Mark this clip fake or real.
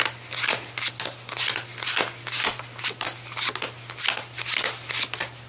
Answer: real